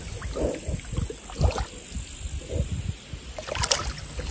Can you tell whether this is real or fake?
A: real